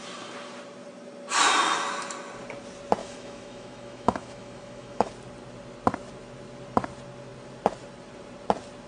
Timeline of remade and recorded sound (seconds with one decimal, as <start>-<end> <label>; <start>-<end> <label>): 0.0-3.0 recorded; 3.0-5.1 remade; 5.1-8.9 recorded

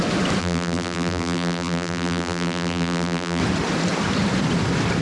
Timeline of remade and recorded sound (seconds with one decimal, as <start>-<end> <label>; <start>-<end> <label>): 0.0-0.4 recorded; 0.4-3.4 remade; 3.4-5.0 recorded